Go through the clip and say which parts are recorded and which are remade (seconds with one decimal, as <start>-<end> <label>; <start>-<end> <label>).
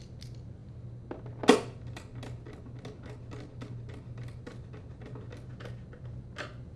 0.0-6.8 recorded